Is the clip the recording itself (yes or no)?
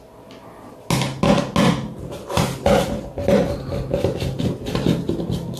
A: yes